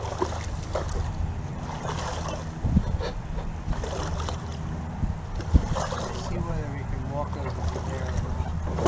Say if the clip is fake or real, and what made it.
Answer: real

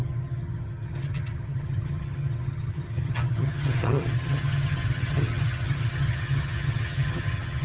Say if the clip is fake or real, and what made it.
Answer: fake, vocoder, HiFi-GAN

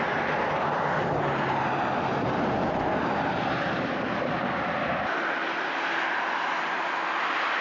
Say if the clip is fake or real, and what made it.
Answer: real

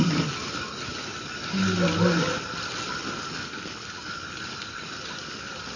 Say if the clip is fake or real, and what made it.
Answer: real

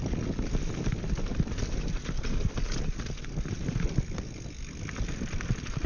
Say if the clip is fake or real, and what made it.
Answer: real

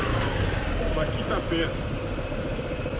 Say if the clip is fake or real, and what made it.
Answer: real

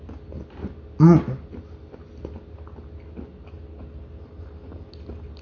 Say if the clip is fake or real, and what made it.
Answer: real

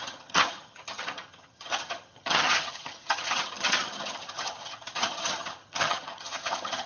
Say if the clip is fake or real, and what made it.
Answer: fake, vocoder, HiFi-GAN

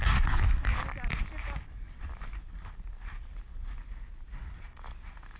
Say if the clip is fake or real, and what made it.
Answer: real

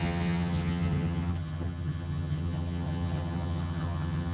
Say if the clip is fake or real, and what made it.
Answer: fake, vocoder, HiFi-GAN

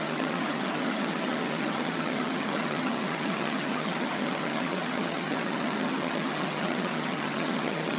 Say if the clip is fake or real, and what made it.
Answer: fake, vocoder, HiFi-GAN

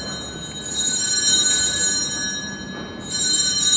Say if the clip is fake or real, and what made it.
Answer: real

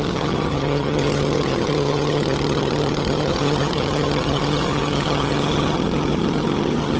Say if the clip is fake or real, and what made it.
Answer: fake, vocoder, HiFi-GAN